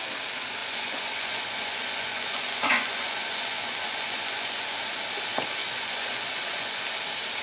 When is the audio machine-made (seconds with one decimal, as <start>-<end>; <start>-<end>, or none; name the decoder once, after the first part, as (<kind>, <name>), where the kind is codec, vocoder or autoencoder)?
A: 0.6-5.0 (vocoder, Vocos); 5.6-6.8

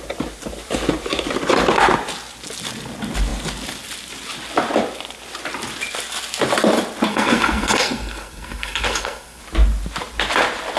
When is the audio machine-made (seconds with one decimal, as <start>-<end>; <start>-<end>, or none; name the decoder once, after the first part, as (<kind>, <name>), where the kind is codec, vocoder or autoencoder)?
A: 7.1-9.4 (codec, SNAC)